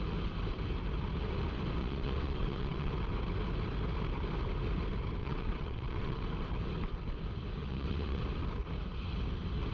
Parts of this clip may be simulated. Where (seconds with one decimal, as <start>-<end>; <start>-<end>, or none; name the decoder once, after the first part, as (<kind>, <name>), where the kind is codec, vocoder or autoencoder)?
1.8-2.9 (vocoder, WaveNeXt); 5.2-6.2; 7.6-8.2